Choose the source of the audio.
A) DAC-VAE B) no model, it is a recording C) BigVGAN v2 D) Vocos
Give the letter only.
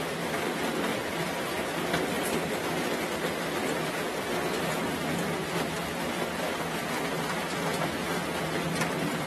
B